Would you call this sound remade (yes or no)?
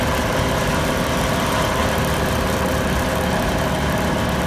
no